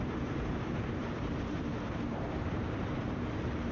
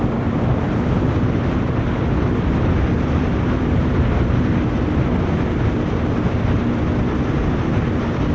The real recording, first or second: second